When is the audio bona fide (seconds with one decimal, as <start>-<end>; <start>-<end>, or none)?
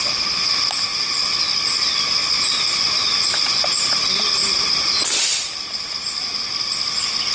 0.0-7.3